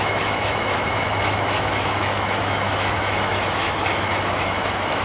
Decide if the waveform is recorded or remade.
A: remade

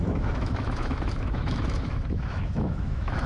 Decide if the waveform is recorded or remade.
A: remade